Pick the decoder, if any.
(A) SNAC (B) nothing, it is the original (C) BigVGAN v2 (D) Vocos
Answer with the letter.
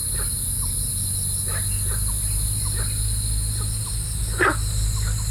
B